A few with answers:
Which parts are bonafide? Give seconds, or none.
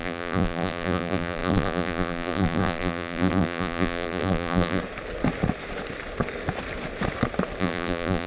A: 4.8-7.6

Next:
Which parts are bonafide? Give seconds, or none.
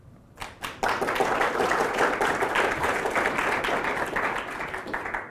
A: 0.0-0.4; 3.6-5.3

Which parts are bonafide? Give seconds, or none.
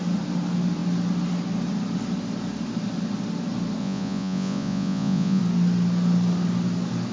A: 0.0-3.8; 5.4-7.1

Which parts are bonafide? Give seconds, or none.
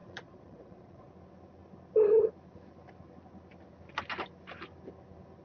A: 1.1-5.4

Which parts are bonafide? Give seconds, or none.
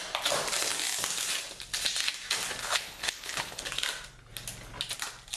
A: 0.0-2.6; 3.6-5.4